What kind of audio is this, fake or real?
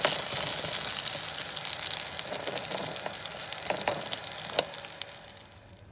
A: real